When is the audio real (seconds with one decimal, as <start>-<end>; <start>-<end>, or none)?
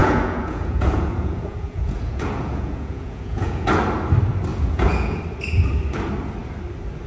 3.7-4.5; 5.2-7.1